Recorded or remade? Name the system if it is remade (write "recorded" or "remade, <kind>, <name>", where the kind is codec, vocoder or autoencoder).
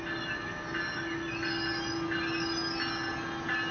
recorded